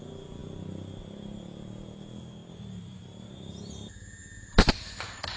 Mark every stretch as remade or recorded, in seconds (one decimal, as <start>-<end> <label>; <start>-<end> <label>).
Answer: 0.0-5.4 recorded

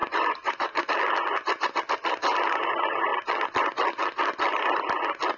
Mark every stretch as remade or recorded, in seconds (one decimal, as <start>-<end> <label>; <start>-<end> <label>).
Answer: 0.0-0.9 remade; 0.9-5.4 recorded

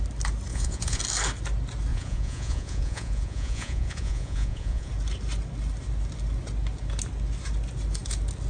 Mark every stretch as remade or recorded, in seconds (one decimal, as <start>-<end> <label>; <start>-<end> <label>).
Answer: 0.0-0.5 recorded; 0.5-1.0 remade; 1.0-1.9 recorded; 1.9-4.9 remade; 4.9-8.5 recorded

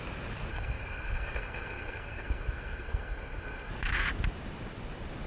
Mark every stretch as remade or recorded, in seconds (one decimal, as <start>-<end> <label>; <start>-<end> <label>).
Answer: 0.0-0.5 recorded; 0.5-3.7 remade; 3.7-5.3 recorded

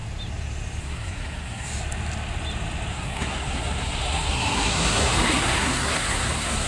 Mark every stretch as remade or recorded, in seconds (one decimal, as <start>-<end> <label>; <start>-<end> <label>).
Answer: 0.0-0.8 recorded; 0.8-1.7 remade; 1.7-2.9 recorded; 2.9-6.7 remade

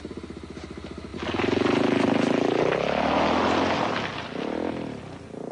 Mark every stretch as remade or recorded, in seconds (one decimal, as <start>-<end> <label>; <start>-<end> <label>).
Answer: 0.0-5.5 recorded

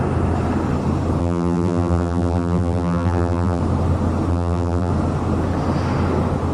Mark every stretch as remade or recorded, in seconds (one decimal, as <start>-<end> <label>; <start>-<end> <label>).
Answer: 0.0-1.2 recorded; 1.2-3.6 remade; 3.6-4.3 recorded; 4.3-4.9 remade; 4.9-6.5 recorded

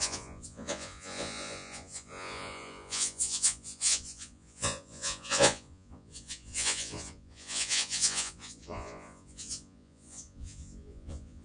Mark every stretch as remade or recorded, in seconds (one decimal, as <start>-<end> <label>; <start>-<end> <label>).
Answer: 0.0-11.4 remade